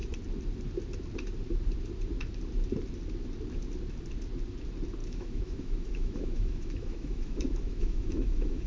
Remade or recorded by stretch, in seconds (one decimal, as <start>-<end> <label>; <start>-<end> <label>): 0.0-5.0 recorded; 5.0-8.7 remade